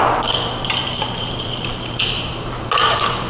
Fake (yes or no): yes